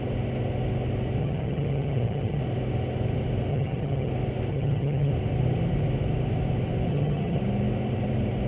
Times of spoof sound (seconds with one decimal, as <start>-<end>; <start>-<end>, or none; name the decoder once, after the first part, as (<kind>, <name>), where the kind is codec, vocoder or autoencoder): 1.2-2.4 (vocoder, HiFi-GAN); 3.5-4.1; 4.5-5.1; 6.9-7.4